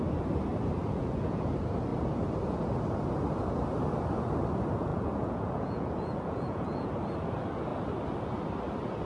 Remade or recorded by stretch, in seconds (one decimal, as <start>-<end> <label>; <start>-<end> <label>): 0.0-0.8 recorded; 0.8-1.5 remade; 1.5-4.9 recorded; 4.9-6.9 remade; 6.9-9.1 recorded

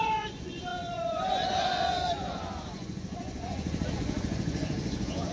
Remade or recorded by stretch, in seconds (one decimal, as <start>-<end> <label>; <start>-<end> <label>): 0.0-5.3 remade

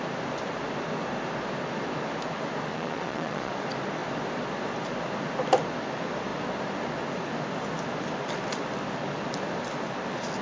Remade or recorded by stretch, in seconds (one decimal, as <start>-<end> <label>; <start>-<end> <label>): 0.0-2.7 recorded; 2.7-3.5 remade; 3.5-10.4 recorded

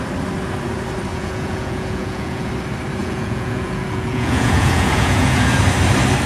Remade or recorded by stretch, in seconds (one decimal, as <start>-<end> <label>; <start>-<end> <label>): 0.0-1.1 recorded; 1.1-2.5 remade; 2.5-3.0 recorded; 3.0-5.6 remade; 5.6-6.3 recorded

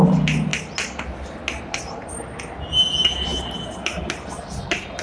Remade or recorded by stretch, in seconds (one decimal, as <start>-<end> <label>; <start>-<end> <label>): 0.0-5.0 recorded

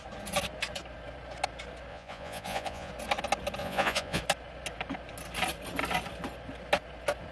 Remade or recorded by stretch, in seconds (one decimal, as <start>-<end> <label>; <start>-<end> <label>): 0.0-1.9 recorded; 1.9-2.9 remade; 2.9-3.6 recorded; 3.6-4.2 remade; 4.2-7.3 recorded

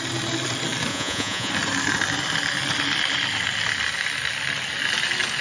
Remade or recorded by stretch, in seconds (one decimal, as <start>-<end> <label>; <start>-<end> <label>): 0.0-0.9 recorded; 0.9-1.5 remade; 1.5-5.4 recorded